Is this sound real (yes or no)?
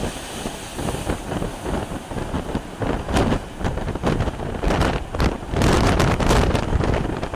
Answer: yes